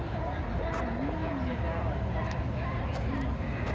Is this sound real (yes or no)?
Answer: yes